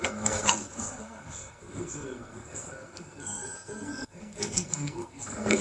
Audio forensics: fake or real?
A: fake